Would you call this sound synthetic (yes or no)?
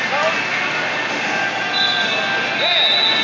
no